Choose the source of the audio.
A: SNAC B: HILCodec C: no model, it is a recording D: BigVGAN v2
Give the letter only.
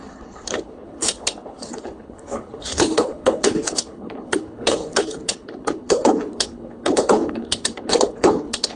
B